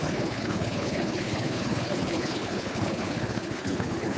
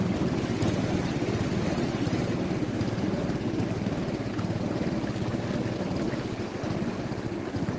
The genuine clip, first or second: second